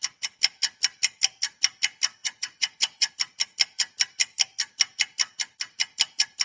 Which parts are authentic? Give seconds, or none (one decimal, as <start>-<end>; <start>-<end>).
0.0-2.2; 3.1-6.4